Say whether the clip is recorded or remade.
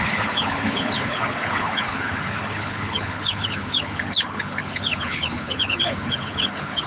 remade